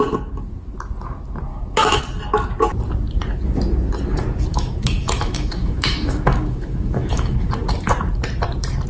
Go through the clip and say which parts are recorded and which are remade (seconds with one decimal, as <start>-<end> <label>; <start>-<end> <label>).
0.0-1.5 recorded; 1.5-2.0 remade; 2.0-4.5 recorded; 4.5-7.5 remade; 7.5-8.9 recorded